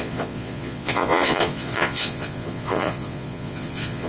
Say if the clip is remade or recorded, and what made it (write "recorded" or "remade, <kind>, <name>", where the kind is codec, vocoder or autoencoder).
remade, vocoder, Vocos